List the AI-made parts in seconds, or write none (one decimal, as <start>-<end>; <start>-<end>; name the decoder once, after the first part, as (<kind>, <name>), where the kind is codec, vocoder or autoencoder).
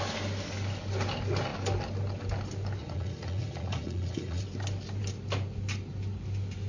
2.8-4.4 (vocoder, Vocos)